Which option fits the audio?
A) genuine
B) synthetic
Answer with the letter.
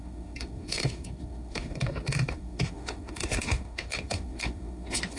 B